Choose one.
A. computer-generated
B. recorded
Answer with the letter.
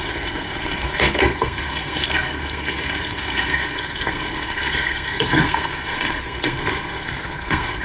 A